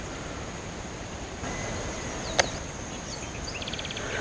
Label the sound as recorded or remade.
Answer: recorded